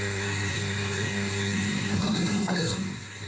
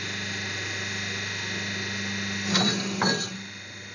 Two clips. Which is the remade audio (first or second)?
first